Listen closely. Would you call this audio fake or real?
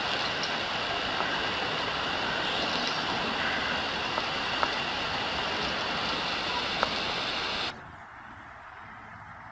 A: real